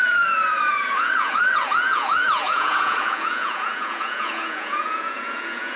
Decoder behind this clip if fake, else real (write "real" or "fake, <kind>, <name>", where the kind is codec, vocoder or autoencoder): fake, vocoder, Vocos